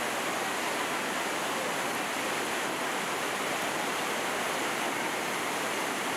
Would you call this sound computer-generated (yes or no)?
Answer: no